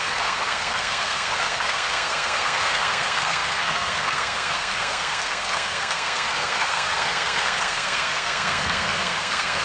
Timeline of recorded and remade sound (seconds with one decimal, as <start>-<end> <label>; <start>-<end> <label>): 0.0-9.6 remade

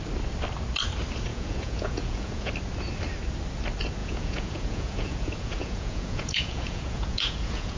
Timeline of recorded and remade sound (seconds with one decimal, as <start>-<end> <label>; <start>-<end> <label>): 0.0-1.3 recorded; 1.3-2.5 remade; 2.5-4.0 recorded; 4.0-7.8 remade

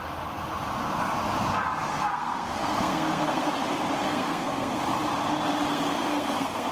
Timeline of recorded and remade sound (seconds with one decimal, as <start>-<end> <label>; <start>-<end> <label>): 0.0-1.9 recorded; 1.9-3.5 remade; 3.5-4.0 recorded; 4.0-4.8 remade; 4.8-5.7 recorded; 5.7-6.7 remade

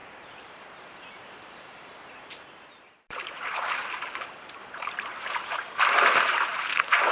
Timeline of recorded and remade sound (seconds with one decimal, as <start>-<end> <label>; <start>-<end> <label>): 0.0-3.9 remade; 3.9-4.6 recorded; 4.6-5.8 remade; 5.8-7.1 recorded